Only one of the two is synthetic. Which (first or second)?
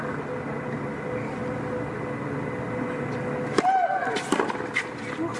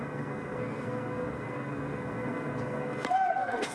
second